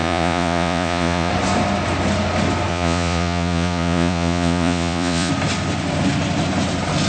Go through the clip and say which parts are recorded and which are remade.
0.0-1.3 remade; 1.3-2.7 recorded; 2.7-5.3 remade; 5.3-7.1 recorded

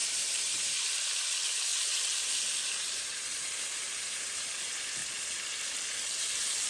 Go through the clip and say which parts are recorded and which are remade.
0.0-0.8 remade; 0.8-2.8 recorded; 2.8-4.5 remade; 4.5-6.7 recorded

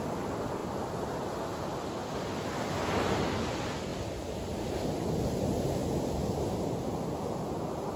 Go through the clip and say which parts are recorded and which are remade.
0.0-8.0 recorded

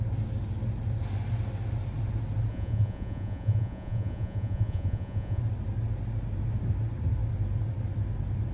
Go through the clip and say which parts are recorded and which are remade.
0.0-2.5 recorded; 2.5-5.4 remade; 5.4-8.5 recorded

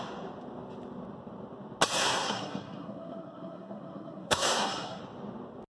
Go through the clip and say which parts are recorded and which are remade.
0.0-2.0 recorded; 2.0-5.0 remade; 5.0-5.7 recorded

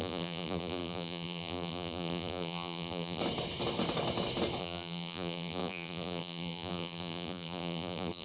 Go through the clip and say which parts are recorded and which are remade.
0.0-3.2 remade; 3.2-4.6 recorded; 4.6-8.2 remade

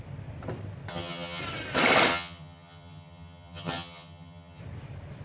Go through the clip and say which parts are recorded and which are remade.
0.0-0.9 recorded; 0.9-1.4 remade; 1.4-2.1 recorded; 2.1-4.6 remade; 4.6-5.2 recorded